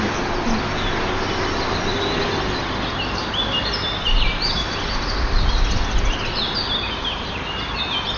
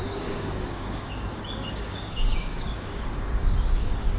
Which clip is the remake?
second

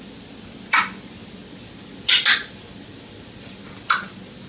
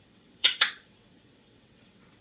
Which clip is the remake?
second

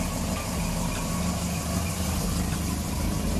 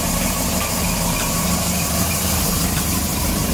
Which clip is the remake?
second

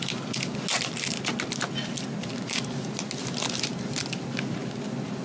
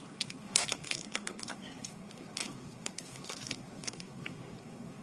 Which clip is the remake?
second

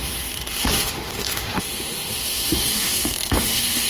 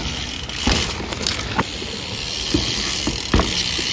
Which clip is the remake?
first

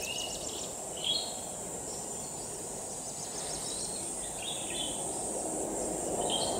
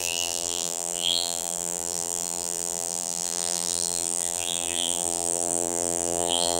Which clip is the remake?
second